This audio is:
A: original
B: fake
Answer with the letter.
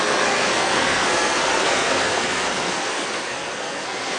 B